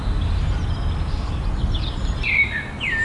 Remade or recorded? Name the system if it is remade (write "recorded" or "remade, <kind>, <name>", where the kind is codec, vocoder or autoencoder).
recorded